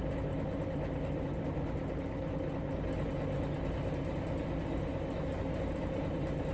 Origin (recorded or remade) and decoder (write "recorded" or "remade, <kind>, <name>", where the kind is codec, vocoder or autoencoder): recorded